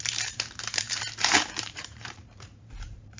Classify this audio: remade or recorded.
remade